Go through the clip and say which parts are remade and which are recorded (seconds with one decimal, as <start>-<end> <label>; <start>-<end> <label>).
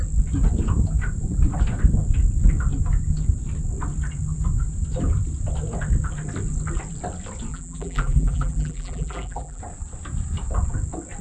0.0-7.5 recorded; 7.5-9.6 remade; 9.6-11.2 recorded